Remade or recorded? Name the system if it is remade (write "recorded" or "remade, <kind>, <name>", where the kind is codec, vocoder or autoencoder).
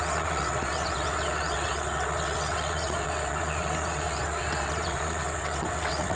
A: remade, vocoder, WaveNeXt